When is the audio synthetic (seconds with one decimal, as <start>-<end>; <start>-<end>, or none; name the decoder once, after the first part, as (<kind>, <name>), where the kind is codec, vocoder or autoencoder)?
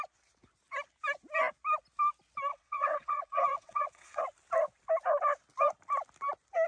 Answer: 2.5-4.2 (vocoder, WaveNeXt)